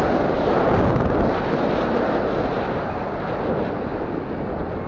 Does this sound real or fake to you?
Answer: real